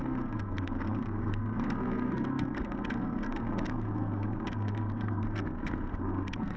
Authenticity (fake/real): fake